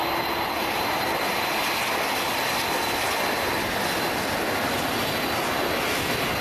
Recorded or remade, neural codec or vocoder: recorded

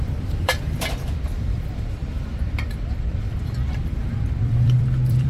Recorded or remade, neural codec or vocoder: remade, vocoder, BigVGAN v2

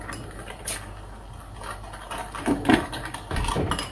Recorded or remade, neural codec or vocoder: recorded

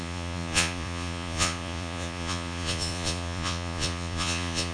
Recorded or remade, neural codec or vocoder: remade, vocoder, Vocos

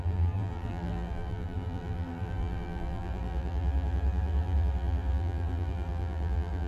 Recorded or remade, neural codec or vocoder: remade, vocoder, BigVGAN v2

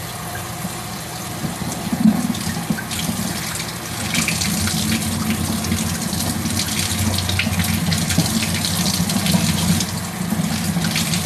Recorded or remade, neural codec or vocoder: recorded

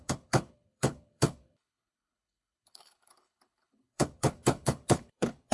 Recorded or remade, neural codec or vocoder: remade, codec, HILCodec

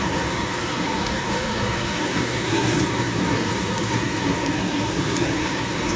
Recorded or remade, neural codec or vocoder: remade, codec, SNAC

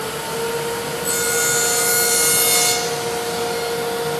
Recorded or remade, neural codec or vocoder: recorded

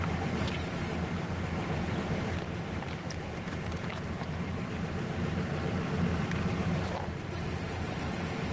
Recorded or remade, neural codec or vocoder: remade, vocoder, BigVGAN v2